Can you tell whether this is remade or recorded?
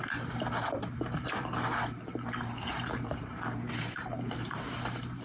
remade